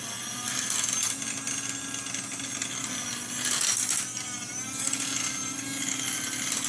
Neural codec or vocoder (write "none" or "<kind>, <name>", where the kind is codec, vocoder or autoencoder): none